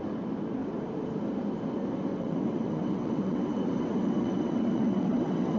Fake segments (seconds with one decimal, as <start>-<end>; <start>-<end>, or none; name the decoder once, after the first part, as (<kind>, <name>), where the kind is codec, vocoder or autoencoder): 2.1-5.6 (vocoder, WaveNeXt)

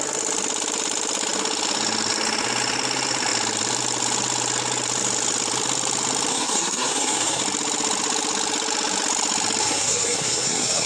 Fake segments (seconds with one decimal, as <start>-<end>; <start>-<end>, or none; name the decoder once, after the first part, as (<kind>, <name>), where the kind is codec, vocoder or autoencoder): 6.3-7.4 (codec, SNAC); 9.6-10.9

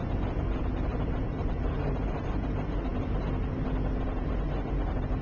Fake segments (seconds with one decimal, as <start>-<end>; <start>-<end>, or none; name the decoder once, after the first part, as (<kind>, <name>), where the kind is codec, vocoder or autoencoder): 0.9-1.5 (vocoder, BigVGAN v2)

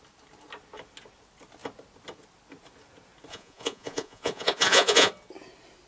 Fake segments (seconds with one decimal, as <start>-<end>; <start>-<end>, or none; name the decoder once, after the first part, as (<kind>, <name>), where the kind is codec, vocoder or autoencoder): 3.3-5.1 (vocoder, Vocos)